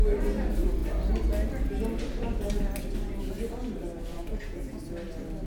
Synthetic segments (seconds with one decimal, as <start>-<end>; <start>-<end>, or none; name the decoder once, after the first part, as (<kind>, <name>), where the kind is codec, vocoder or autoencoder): 4.1-4.8 (vocoder, Vocos)